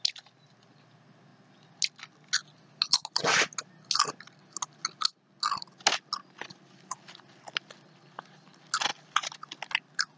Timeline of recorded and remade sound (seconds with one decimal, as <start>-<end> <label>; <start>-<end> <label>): 0.0-10.2 recorded